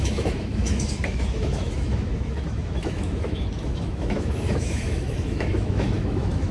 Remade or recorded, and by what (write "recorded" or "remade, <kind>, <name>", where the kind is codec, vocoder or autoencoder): remade, autoencoder, DAC-VAE